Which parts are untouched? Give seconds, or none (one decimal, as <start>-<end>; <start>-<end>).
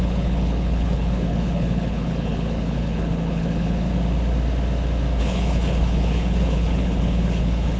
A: 3.9-5.2